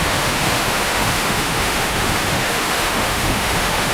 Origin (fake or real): fake